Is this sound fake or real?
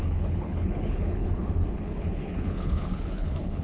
fake